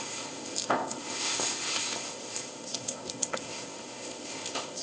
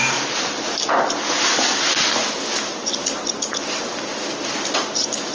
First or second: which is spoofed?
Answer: first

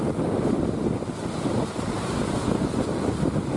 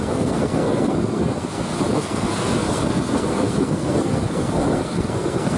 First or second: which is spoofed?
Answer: second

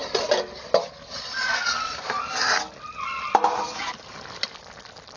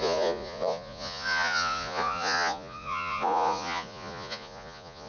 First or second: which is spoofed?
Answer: second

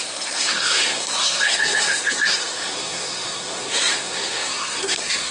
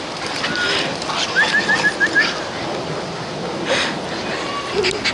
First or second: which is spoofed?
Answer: first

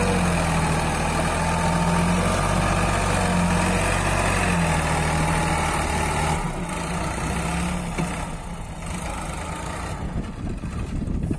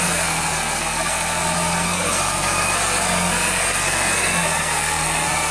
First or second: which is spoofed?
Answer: second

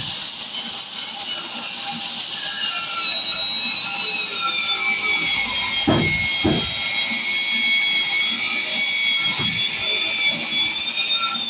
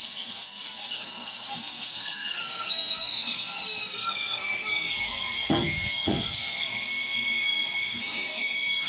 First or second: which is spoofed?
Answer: second